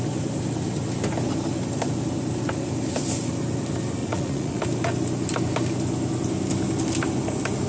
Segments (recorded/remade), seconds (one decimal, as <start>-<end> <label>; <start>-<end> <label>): 0.0-4.0 recorded; 4.0-4.6 remade; 4.6-7.7 recorded